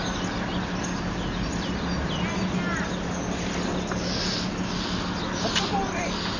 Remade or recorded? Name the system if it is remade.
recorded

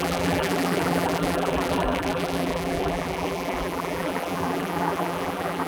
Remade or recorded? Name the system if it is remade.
remade, vocoder, BigVGAN v2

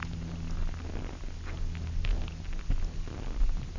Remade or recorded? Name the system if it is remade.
recorded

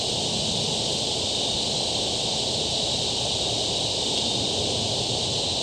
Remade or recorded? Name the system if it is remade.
recorded